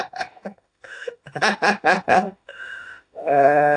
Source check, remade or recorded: remade